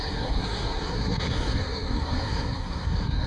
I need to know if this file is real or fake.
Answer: fake